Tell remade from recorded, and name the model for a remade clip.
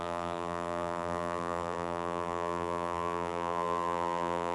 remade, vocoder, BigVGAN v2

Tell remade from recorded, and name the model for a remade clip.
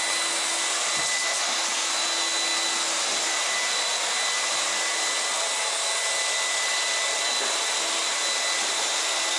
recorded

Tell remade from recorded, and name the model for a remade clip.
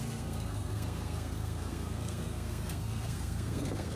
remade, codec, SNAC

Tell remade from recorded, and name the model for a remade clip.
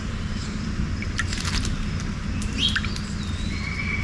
recorded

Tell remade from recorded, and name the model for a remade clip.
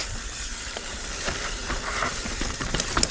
remade, vocoder, BigVGAN v2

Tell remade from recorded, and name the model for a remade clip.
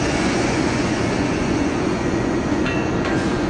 remade, vocoder, Vocos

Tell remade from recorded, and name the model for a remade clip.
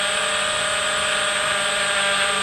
recorded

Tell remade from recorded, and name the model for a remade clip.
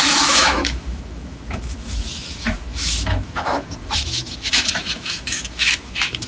remade, autoencoder, DAC-VAE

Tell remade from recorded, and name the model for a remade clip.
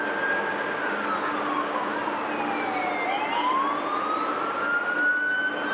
recorded